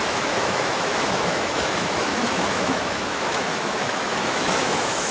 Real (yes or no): no